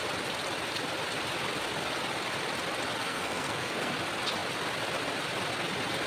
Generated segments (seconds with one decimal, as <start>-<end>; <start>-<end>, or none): 3.0-3.9